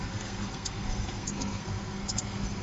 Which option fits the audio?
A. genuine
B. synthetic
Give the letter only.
B